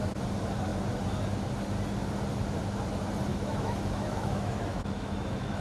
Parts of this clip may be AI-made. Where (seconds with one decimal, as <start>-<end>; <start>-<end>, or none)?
3.3-5.6